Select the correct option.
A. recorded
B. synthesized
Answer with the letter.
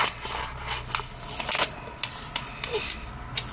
A